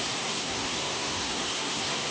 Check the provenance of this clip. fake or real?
fake